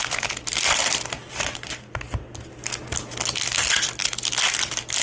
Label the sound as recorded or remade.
recorded